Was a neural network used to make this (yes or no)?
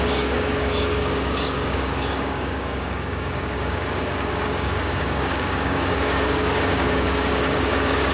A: yes